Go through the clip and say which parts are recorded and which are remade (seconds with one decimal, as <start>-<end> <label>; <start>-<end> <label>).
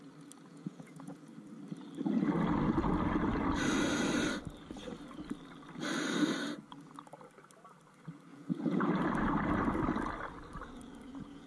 0.0-0.5 recorded; 0.5-1.3 remade; 1.3-8.3 recorded; 8.3-8.9 remade; 8.9-11.5 recorded